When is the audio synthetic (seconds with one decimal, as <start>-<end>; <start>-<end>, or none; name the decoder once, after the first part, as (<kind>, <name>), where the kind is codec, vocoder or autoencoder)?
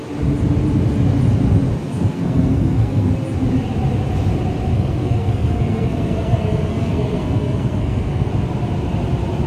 1.8-3.1 (codec, SNAC); 4.7-8.3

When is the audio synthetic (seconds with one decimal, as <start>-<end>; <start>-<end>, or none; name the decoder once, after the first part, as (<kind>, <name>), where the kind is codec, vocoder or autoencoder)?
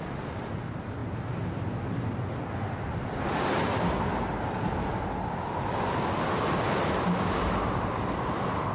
none